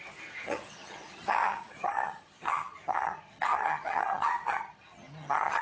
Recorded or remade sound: remade